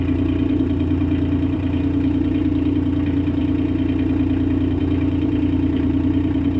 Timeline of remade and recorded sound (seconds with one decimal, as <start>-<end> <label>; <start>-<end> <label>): 0.0-3.4 remade; 3.4-4.8 recorded; 4.8-6.6 remade